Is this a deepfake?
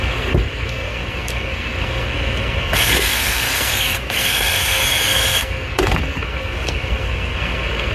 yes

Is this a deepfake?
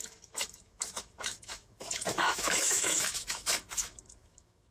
yes